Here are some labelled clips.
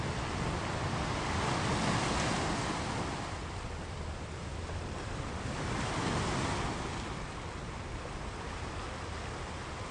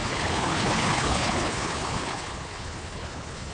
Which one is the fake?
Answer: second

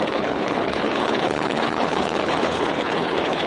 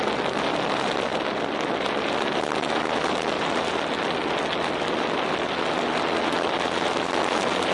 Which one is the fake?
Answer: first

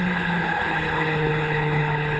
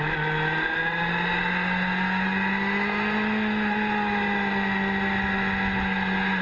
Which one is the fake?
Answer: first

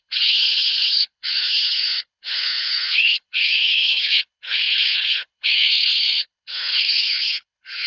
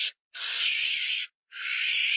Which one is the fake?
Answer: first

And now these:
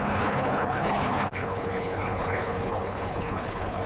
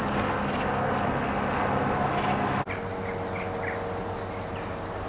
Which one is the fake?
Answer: first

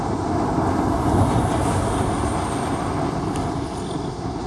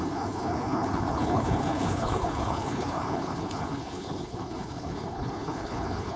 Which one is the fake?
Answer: second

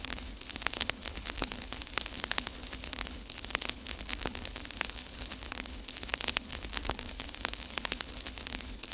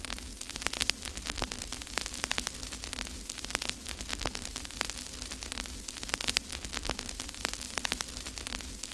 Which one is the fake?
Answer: first